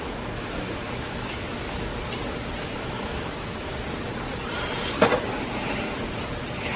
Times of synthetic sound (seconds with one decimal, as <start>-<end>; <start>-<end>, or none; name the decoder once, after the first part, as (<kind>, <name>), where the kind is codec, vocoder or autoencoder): 0.0-1.9 (autoencoder, DAC-VAE); 2.6-3.7